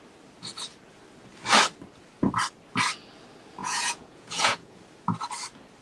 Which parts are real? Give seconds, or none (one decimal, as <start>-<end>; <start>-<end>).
0.0-3.6; 4.8-5.8